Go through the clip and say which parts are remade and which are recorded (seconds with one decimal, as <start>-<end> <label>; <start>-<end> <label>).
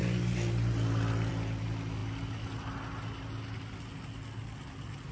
0.0-5.1 recorded